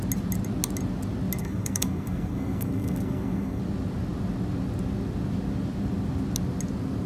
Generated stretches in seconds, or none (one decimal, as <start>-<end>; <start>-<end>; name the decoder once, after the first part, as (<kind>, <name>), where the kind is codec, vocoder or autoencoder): 1.4-3.6 (codec, SNAC)